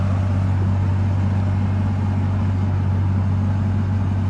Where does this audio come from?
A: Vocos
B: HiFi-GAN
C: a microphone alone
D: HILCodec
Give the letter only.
C